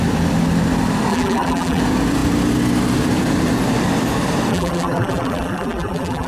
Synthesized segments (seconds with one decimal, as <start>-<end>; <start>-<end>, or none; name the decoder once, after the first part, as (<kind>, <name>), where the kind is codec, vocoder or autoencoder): 1.1-1.8 (vocoder, BigVGAN v2); 4.5-6.3

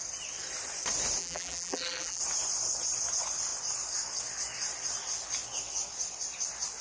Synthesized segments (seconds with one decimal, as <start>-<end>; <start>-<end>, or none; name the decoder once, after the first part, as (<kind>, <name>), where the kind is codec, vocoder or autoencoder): 1.2-2.2 (vocoder, BigVGAN v2)

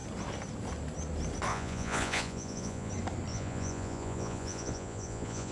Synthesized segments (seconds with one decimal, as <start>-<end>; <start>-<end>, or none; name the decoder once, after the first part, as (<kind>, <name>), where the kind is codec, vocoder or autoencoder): 1.5-2.9 (vocoder, Vocos); 3.3-5.5

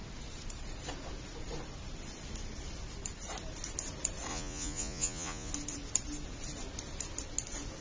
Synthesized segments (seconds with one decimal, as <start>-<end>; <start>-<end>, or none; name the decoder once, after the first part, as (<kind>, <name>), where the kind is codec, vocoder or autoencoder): 4.3-5.5 (vocoder, Vocos)